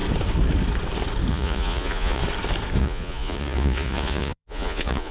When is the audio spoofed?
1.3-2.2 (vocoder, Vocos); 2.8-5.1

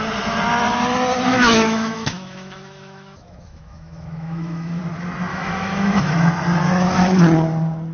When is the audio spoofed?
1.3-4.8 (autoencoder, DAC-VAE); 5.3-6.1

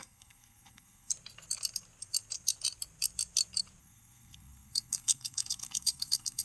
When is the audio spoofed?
0.0-1.1 (codec, SNAC); 3.8-6.4

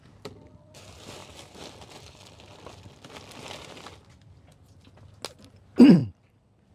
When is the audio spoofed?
none

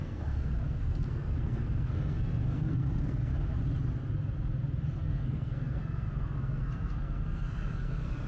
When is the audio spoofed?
0.0-3.3 (codec, SNAC); 5.0-8.3

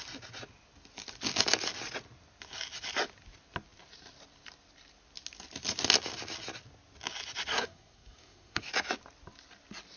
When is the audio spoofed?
7.5-8.7 (codec, SNAC)